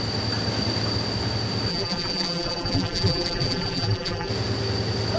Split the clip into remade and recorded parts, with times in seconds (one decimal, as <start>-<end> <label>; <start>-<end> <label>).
0.0-1.7 recorded; 1.7-4.3 remade; 4.3-5.2 recorded